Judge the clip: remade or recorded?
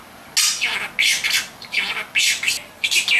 recorded